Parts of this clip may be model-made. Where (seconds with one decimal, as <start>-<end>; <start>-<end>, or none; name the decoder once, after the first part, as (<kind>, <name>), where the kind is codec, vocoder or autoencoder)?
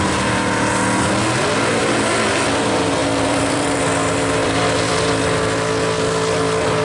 1.8-2.4 (vocoder, BigVGAN v2); 3.0-3.8; 4.4-5.1